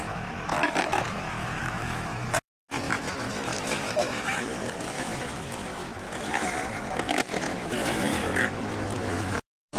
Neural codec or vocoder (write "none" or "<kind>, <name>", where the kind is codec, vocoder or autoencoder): autoencoder, DAC-VAE